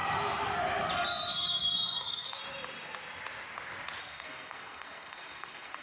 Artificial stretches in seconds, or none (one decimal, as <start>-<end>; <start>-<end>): 1.4-2.4; 4.0-5.8